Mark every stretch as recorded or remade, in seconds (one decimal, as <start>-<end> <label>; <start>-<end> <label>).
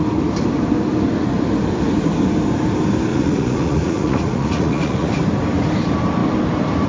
0.0-3.1 recorded; 3.1-5.1 remade; 5.1-6.9 recorded